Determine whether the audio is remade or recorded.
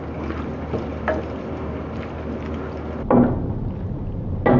recorded